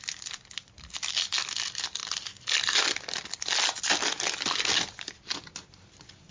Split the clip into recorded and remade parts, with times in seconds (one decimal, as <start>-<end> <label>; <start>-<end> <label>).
0.0-6.3 recorded